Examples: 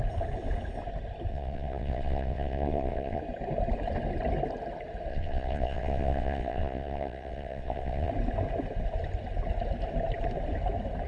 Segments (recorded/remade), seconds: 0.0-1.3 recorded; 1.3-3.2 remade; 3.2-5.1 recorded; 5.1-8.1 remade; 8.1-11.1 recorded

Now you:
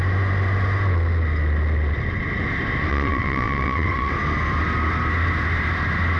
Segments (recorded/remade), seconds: 0.0-2.9 recorded; 2.9-4.1 remade; 4.1-6.2 recorded

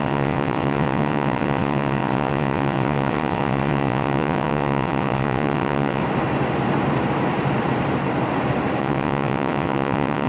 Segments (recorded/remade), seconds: 0.0-6.0 remade; 6.0-8.8 recorded; 8.8-10.3 remade